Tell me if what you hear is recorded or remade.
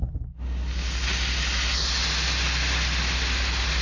recorded